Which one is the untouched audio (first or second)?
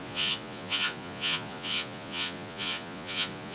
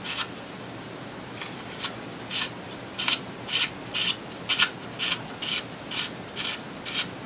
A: second